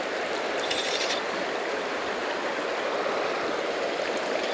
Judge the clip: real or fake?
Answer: real